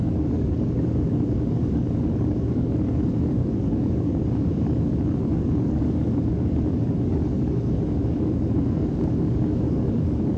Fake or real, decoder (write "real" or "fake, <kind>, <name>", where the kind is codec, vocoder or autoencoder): fake, codec, DAC